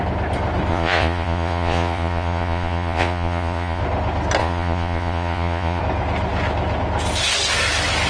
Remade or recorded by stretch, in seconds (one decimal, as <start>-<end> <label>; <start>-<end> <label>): 0.0-0.7 recorded; 0.7-3.8 remade; 3.8-4.4 recorded; 4.4-5.8 remade; 5.8-8.1 recorded